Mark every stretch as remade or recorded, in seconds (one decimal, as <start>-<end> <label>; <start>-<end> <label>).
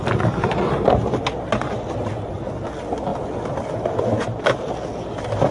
0.0-5.5 recorded